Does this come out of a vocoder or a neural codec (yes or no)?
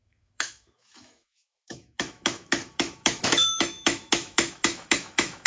yes